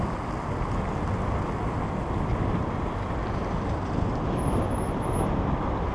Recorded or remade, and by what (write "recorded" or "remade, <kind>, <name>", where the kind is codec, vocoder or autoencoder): recorded